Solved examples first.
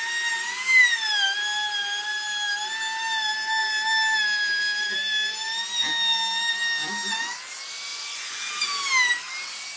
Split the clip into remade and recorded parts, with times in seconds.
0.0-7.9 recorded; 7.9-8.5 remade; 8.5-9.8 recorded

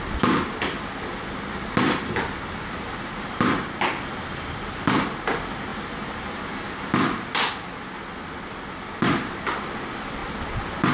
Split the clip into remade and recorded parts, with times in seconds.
0.0-10.9 recorded

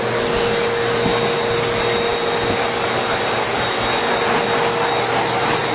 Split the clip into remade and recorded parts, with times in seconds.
0.0-5.7 recorded